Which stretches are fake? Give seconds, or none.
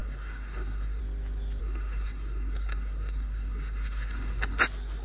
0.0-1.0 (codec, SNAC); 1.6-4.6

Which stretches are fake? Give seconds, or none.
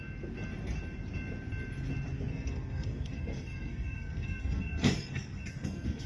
2.3-6.1 (codec, SNAC)